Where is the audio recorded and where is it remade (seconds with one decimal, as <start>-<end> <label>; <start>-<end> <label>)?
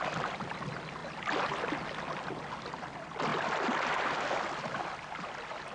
0.0-5.7 recorded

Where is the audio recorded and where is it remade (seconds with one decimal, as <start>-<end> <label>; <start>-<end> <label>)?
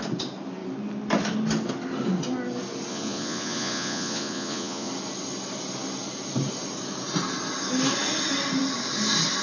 0.0-2.9 recorded; 2.9-4.9 remade; 4.9-9.4 recorded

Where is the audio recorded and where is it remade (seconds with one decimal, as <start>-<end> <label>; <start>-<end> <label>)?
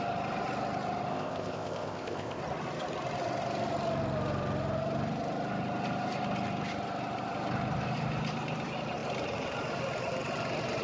0.0-1.1 recorded; 1.1-2.4 remade; 2.4-10.8 recorded